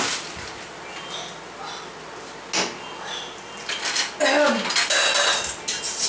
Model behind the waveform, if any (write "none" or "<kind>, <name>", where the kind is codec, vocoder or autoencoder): none